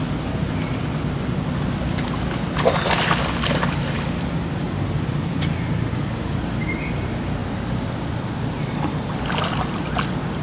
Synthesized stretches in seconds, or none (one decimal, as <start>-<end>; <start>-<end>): 7.4-8.3